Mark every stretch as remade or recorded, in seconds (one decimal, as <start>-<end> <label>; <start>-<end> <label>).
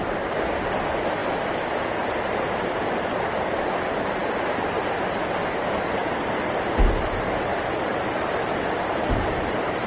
0.0-9.9 recorded